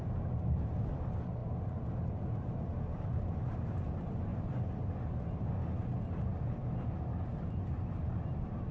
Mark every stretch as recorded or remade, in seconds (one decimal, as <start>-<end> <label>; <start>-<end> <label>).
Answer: 0.0-8.7 recorded